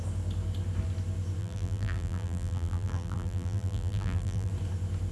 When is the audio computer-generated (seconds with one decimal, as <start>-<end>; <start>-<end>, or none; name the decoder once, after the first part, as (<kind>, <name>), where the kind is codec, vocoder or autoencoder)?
1.4-4.5 (vocoder, BigVGAN v2)